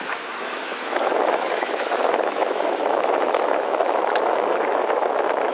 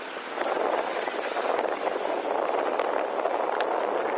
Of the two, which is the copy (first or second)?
first